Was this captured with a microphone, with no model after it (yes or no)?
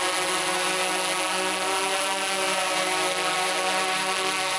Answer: yes